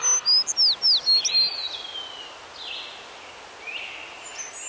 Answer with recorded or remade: recorded